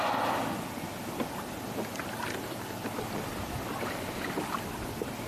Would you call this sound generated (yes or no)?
no